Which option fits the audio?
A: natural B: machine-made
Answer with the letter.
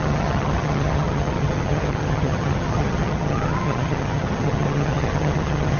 B